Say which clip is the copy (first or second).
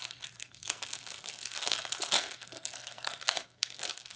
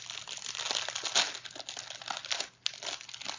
first